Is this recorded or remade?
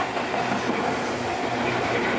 recorded